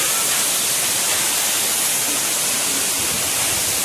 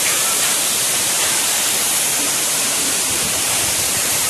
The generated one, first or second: second